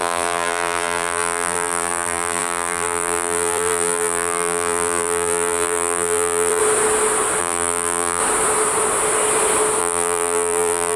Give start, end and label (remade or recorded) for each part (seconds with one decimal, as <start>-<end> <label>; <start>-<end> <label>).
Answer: 0.0-6.6 remade; 6.6-7.4 recorded; 7.4-8.2 remade; 8.2-9.8 recorded; 9.8-11.0 remade